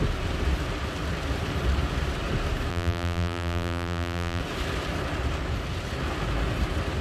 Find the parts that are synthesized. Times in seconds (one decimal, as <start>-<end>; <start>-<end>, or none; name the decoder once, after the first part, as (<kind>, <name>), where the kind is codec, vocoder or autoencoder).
2.7-4.4 (vocoder, BigVGAN v2)